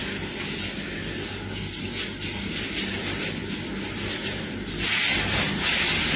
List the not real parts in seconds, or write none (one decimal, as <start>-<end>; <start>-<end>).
none